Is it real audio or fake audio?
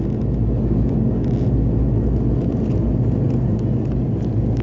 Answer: real